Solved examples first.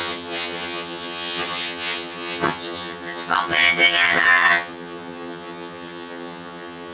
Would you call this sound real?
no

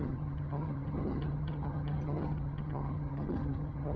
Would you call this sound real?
no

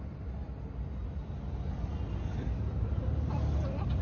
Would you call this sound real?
yes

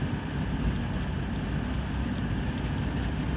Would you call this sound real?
yes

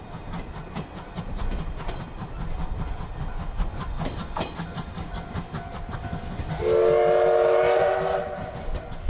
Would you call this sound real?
yes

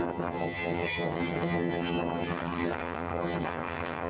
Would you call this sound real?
no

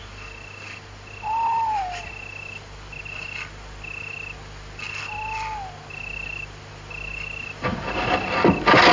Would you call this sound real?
yes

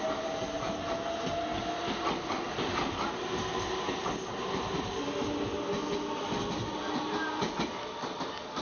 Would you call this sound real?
yes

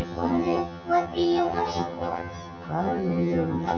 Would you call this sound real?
no